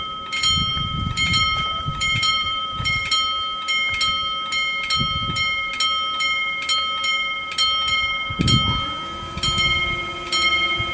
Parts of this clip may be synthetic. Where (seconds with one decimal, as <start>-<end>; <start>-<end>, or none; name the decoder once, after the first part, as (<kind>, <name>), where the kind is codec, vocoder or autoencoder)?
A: 0.7-3.1 (vocoder, BigVGAN v2)